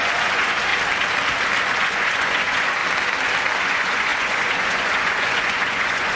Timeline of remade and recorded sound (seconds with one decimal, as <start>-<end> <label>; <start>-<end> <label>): 0.0-0.7 remade; 0.7-1.7 recorded; 1.7-2.8 remade; 2.8-3.6 recorded; 3.6-6.2 remade